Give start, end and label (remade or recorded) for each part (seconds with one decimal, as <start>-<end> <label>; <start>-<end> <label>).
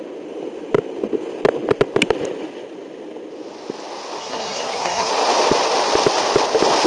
0.0-4.2 recorded; 4.2-5.1 remade; 5.1-6.9 recorded